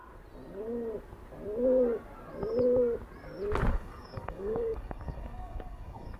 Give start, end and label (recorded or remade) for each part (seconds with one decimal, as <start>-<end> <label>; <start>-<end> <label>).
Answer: 0.0-3.7 recorded; 3.7-6.2 remade